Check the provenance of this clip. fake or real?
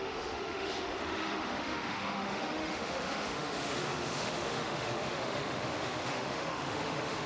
fake